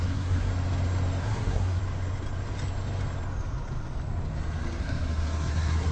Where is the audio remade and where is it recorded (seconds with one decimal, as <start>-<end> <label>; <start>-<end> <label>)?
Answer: 0.0-0.5 remade; 0.5-1.2 recorded; 1.2-1.8 remade; 1.8-4.8 recorded; 4.8-5.9 remade